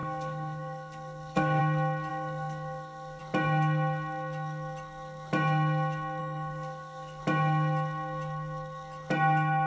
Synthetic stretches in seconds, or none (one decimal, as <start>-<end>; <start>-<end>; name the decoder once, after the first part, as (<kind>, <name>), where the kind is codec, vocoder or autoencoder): 0.0-1.6 (codec, SNAC); 2.1-3.2; 6.2-7.2

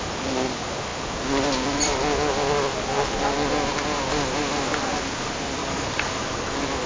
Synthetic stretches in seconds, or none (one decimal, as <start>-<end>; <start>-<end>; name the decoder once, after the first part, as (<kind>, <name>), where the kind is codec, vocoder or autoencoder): 5.6-6.5 (codec, DAC)

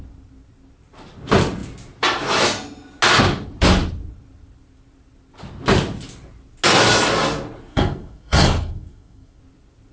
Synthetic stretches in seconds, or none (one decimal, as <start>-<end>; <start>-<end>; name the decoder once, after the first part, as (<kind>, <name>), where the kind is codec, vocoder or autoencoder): 7.7-9.4 (codec, SNAC)

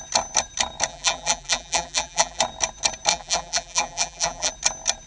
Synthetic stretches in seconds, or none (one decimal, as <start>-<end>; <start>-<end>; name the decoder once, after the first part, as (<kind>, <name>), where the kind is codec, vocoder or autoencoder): 0.9-2.4 (vocoder, BigVGAN v2); 3.1-4.5

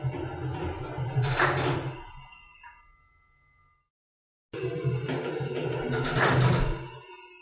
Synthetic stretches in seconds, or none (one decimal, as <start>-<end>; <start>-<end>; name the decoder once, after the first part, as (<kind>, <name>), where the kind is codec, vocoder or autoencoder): none

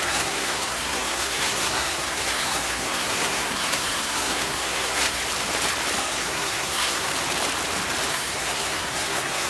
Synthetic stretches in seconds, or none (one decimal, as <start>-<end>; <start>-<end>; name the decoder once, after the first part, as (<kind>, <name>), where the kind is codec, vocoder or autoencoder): 0.0-5.2 (codec, SNAC); 6.0-7.1; 8.1-9.5

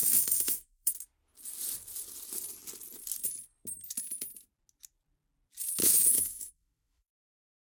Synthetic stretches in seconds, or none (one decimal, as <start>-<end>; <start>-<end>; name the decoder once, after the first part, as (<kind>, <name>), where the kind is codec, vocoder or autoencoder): 0.0-0.9 (autoencoder, DAC-VAE); 5.8-7.8

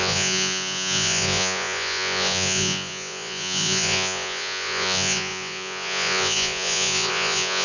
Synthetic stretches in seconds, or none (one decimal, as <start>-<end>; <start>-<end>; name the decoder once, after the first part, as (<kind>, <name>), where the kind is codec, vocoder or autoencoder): 0.0-7.6 (vocoder, Vocos)